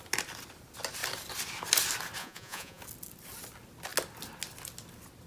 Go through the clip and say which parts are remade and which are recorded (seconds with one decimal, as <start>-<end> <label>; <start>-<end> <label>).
0.0-2.2 recorded; 2.2-2.8 remade; 2.8-5.3 recorded